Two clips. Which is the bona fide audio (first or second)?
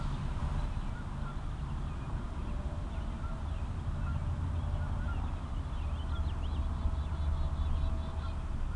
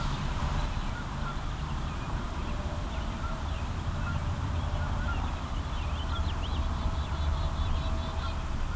first